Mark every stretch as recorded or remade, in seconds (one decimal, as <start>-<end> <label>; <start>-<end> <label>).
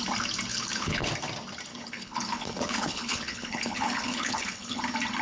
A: 0.0-0.5 recorded; 0.5-1.1 remade; 1.1-1.7 recorded; 1.7-4.8 remade; 4.8-5.2 recorded